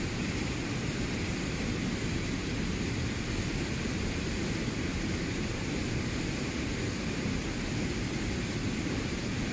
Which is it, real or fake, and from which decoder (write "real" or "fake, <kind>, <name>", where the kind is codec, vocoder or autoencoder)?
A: fake, vocoder, BigVGAN v2